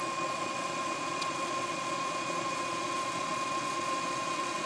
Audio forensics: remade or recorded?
remade